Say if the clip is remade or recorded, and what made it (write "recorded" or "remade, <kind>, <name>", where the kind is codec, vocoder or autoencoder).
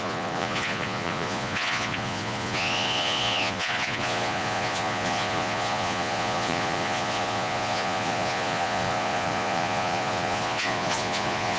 remade, vocoder, Vocos